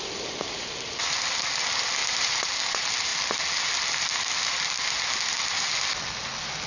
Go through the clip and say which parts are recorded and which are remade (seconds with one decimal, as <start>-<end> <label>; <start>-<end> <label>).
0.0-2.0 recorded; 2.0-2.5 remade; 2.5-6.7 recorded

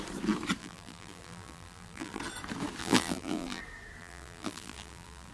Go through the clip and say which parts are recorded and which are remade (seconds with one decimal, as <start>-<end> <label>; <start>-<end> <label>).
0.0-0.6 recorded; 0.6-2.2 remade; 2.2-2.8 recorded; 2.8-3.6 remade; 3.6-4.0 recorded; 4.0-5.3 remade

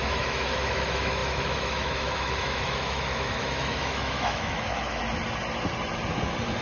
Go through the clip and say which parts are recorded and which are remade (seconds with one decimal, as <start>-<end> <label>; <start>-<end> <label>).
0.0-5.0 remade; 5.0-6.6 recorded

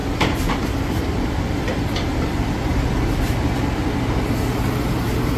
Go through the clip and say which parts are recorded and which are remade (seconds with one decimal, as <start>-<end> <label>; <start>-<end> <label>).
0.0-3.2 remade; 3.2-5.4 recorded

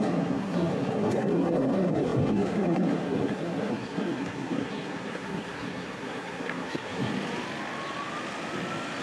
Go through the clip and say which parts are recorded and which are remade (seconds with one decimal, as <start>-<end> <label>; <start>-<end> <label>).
0.0-7.1 remade; 7.1-9.0 recorded